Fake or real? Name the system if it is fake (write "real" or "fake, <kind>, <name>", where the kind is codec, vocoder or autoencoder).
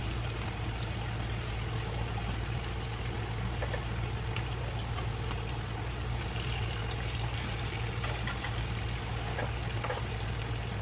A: real